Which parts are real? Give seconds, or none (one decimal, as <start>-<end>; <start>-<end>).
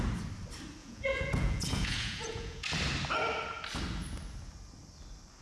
0.0-0.8; 2.7-5.4